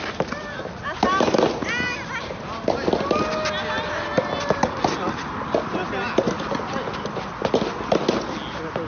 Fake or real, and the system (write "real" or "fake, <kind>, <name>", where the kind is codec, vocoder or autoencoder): real